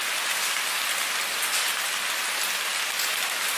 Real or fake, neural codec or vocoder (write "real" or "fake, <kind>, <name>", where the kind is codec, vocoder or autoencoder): real